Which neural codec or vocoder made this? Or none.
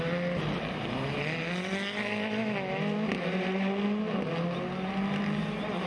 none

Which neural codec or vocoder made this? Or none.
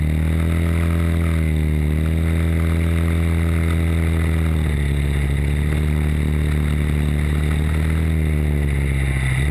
none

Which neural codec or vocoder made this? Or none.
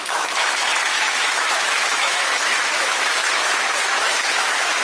autoencoder, DAC-VAE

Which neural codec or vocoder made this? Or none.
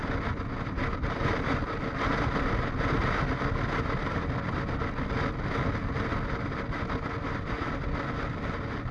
none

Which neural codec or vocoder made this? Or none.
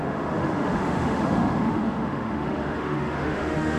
autoencoder, DAC-VAE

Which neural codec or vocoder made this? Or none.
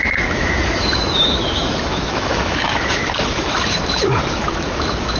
autoencoder, DAC-VAE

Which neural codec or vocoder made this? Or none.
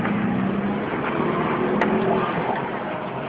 none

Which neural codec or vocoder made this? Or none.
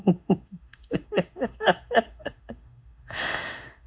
autoencoder, DAC-VAE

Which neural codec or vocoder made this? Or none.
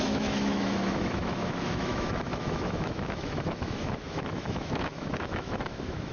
autoencoder, DAC-VAE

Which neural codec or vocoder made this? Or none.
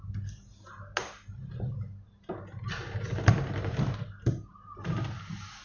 none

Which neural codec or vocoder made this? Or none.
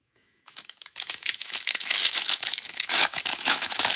autoencoder, DAC-VAE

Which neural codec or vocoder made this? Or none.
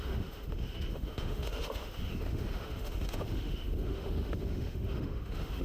autoencoder, DAC-VAE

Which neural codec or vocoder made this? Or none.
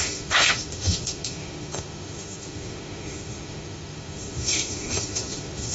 autoencoder, DAC-VAE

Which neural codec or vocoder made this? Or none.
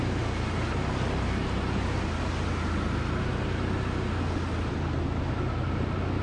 none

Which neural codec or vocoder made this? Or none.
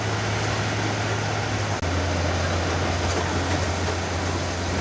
none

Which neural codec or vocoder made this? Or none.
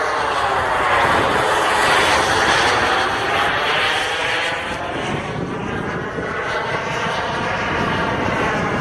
none